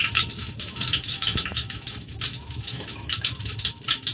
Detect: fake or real fake